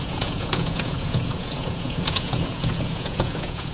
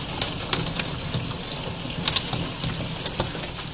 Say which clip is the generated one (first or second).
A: first